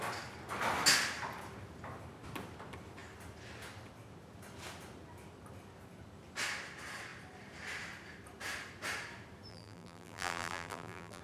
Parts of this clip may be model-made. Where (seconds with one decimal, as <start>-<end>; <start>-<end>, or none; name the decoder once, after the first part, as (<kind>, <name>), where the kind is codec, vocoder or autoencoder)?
9.5-11.2 (vocoder, BigVGAN v2)